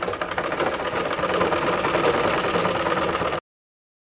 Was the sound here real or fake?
real